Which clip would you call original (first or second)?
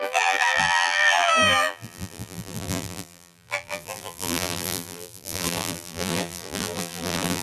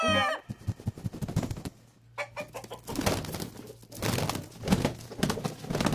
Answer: second